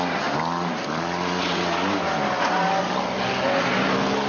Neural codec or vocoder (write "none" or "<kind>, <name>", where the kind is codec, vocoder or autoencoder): none